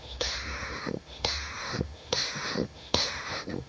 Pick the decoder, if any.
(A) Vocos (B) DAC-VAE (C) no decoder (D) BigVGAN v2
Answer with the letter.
B